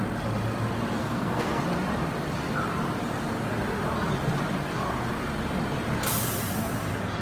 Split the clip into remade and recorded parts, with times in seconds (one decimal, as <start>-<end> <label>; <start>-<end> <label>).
0.0-1.0 recorded; 1.0-1.6 remade; 1.6-7.2 recorded

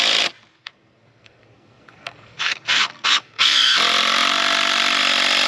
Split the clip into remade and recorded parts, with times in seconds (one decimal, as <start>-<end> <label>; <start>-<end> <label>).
0.0-0.5 recorded; 0.5-3.8 remade; 3.8-5.5 recorded

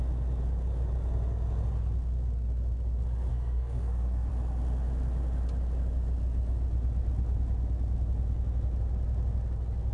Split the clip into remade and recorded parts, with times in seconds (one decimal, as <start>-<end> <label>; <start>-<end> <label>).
0.0-3.3 recorded; 3.3-4.3 remade; 4.3-9.9 recorded

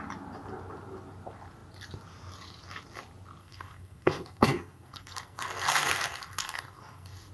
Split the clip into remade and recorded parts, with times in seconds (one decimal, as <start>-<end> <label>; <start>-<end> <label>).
0.0-3.4 recorded; 3.4-7.3 remade

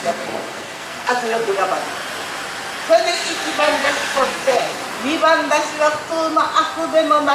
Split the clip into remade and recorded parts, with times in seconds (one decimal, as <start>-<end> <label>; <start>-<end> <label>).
0.0-1.5 remade; 1.5-3.1 recorded; 3.1-4.8 remade; 4.8-7.3 recorded

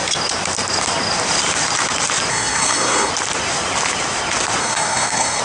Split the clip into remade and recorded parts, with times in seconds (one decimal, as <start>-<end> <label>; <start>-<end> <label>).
0.0-2.3 recorded; 2.3-3.1 remade; 3.1-4.6 recorded; 4.6-5.4 remade

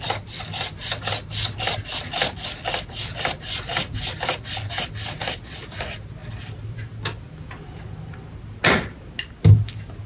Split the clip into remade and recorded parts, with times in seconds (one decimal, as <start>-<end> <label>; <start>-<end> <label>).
0.0-10.1 recorded